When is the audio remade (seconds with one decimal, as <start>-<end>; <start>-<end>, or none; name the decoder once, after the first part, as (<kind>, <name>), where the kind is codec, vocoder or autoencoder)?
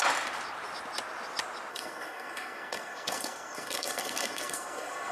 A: 1.7-5.1 (codec, SNAC)